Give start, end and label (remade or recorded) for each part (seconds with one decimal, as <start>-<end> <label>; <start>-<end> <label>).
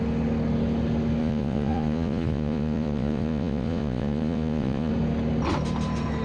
0.0-1.2 recorded; 1.2-4.9 remade; 4.9-6.2 recorded